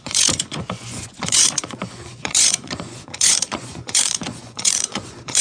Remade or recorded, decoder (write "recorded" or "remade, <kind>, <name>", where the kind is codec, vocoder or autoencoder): remade, vocoder, Vocos